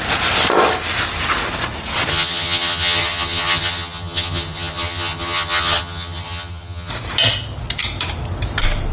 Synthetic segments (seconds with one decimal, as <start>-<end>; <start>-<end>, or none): 2.1-6.9